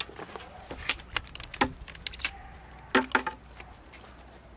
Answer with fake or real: real